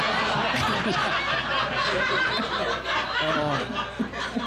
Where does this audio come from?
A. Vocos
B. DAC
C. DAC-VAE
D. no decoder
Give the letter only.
D